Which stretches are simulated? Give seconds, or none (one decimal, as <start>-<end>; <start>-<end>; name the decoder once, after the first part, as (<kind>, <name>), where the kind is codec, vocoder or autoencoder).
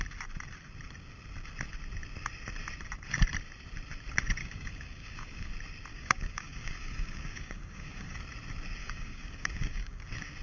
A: 4.4-5.5 (codec, DAC); 5.9-8.2; 8.8-10.0